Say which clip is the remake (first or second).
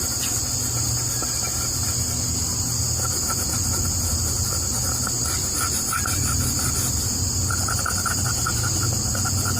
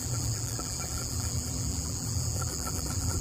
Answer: second